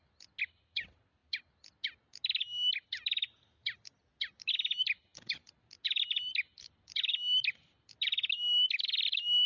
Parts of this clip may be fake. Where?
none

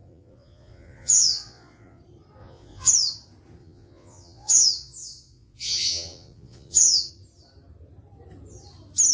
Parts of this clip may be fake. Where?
0.0-2.0 (vocoder, Vocos); 2.4-2.9; 3.6-7.1

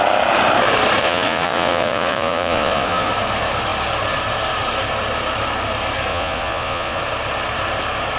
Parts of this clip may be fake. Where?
1.0-3.1 (vocoder, Vocos); 6.1-7.0

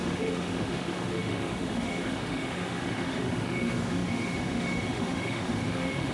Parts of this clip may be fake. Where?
0.0-6.1 (autoencoder, DAC-VAE)